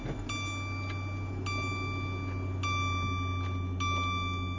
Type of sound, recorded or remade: recorded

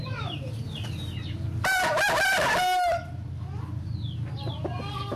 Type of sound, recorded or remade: recorded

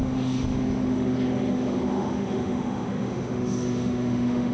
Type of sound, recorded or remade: remade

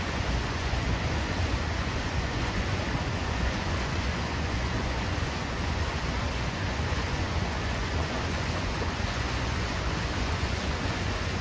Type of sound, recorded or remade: remade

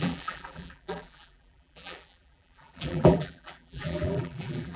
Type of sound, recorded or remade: remade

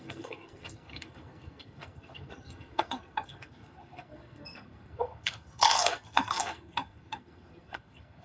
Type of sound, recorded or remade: remade